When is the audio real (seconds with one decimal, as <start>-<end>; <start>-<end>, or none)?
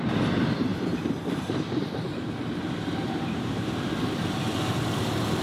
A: 0.0-0.7; 3.9-5.4